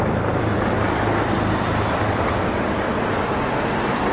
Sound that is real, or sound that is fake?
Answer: fake